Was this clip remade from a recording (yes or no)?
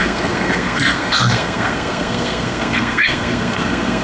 yes